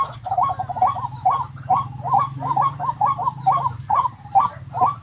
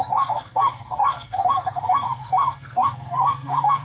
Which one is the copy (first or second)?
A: second